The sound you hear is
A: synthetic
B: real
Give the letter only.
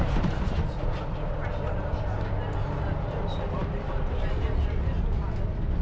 B